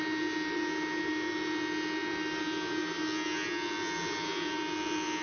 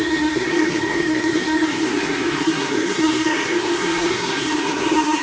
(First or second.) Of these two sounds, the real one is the first